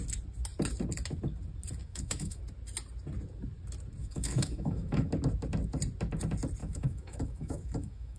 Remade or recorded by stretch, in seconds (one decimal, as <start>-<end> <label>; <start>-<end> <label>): 0.0-1.8 recorded; 1.8-2.4 remade; 2.4-4.0 recorded; 4.0-5.1 remade; 5.1-6.6 recorded; 6.6-8.2 remade